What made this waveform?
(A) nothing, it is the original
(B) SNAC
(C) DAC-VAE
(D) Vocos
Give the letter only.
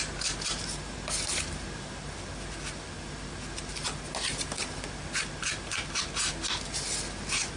A